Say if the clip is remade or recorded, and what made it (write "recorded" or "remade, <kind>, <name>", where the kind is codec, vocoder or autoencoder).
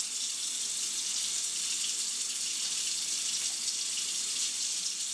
recorded